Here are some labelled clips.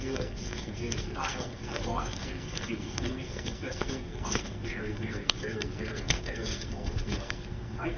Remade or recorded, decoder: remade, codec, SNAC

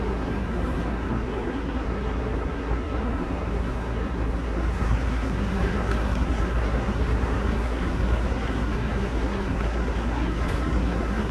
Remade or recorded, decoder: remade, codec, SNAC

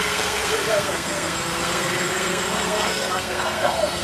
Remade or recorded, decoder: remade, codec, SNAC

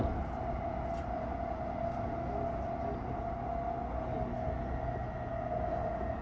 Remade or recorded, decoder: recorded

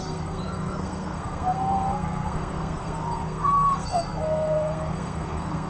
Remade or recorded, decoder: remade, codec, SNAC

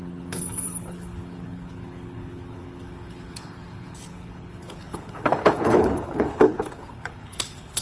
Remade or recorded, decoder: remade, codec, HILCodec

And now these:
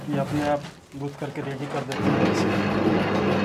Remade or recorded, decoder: recorded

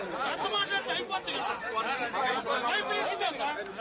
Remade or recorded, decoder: recorded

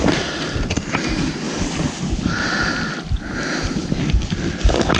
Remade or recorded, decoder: recorded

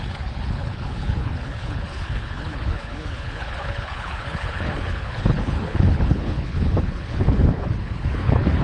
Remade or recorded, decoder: remade, codec, HILCodec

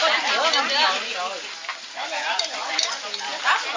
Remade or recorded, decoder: recorded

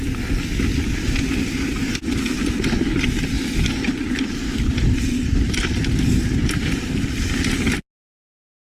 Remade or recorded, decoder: recorded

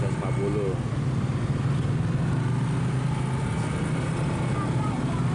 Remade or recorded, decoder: recorded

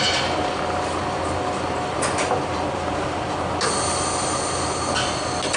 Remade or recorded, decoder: recorded